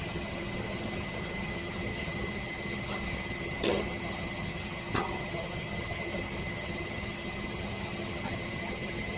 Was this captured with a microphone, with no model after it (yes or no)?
no